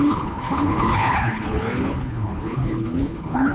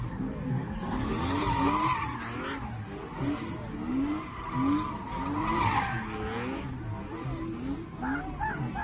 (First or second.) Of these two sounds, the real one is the second